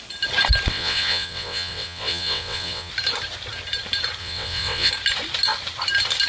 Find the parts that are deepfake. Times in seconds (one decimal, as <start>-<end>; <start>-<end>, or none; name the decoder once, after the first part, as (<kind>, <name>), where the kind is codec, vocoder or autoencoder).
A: 0.7-2.9 (vocoder, WaveNeXt); 4.2-4.9